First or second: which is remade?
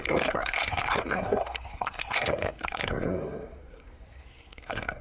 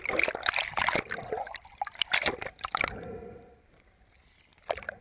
first